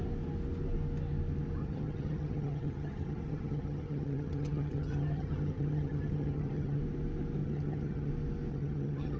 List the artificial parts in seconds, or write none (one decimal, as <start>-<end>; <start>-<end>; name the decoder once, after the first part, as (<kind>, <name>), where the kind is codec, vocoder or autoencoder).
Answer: 1.6-6.8 (vocoder, HiFi-GAN); 7.4-8.1; 8.5-9.2